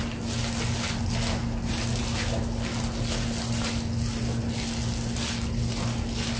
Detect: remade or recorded recorded